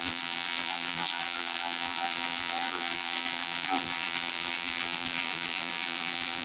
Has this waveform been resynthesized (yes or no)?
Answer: yes